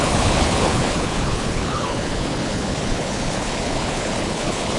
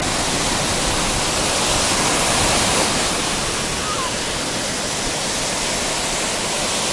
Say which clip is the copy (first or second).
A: first